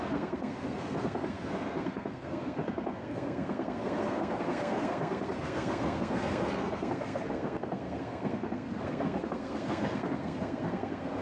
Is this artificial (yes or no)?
yes